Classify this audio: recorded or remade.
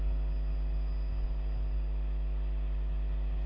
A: recorded